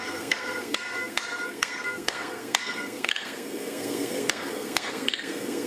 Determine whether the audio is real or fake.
fake